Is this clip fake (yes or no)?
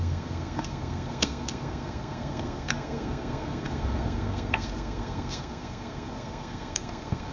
yes